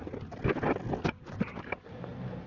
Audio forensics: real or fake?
real